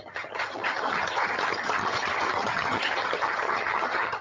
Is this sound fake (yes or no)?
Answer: yes